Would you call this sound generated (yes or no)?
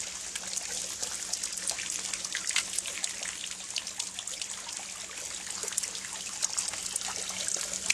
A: no